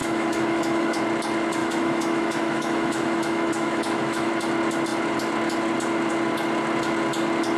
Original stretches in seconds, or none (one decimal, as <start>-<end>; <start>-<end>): 1.0-1.6; 4.3-7.6